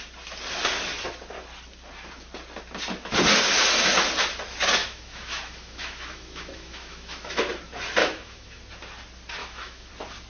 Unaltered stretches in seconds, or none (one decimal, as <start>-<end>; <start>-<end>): 0.0-4.8; 7.4-8.0; 8.6-9.4; 9.9-10.3